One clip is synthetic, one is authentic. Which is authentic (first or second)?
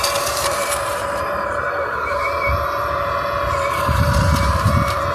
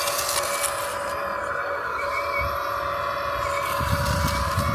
second